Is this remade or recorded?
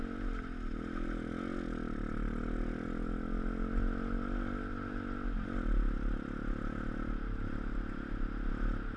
recorded